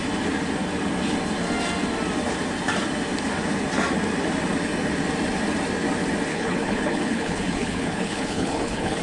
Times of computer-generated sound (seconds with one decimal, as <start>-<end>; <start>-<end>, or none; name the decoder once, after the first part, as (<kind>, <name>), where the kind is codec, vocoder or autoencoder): 6.3-9.0 (codec, HILCodec)